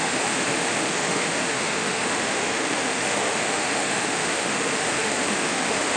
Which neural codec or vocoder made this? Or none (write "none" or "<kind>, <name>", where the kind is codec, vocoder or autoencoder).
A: autoencoder, DAC-VAE